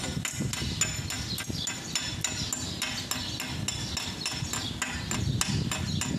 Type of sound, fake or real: real